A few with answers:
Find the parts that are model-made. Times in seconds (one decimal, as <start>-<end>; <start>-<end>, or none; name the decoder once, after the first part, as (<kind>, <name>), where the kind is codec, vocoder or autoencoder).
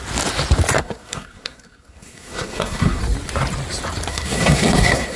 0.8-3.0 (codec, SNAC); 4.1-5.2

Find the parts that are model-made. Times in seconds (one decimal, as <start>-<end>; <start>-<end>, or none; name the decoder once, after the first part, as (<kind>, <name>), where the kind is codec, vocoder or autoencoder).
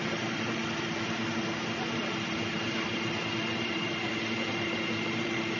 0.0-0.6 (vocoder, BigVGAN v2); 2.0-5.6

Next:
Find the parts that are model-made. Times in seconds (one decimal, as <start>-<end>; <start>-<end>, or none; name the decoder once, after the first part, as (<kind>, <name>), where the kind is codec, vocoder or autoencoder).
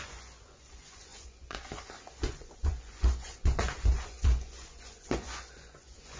0.0-6.2 (vocoder, Vocos)